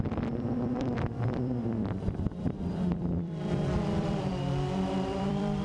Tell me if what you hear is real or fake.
fake